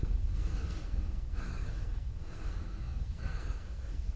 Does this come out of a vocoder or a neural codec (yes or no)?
yes